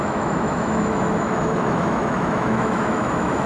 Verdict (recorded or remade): remade